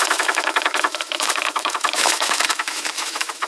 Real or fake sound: fake